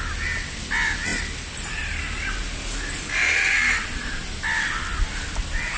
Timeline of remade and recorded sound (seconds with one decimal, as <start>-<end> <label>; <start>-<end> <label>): 0.0-5.8 recorded